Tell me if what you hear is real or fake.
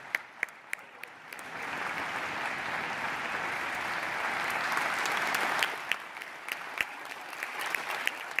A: fake